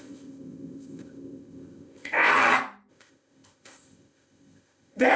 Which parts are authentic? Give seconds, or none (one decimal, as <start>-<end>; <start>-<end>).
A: 2.3-2.9

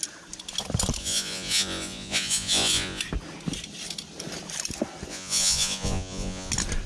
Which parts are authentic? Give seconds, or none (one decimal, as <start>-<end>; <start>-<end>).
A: 0.0-1.0; 3.0-5.1; 6.5-6.9

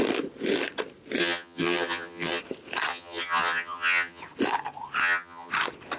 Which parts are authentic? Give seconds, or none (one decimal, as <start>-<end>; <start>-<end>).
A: 0.0-1.2; 2.4-2.9; 4.2-5.0; 5.5-6.0

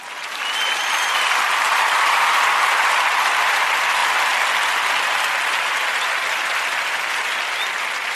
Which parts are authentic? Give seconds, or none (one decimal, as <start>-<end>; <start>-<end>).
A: 4.0-7.1

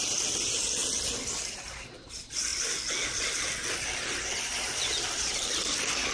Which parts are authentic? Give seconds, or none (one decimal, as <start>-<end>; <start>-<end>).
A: 0.0-6.1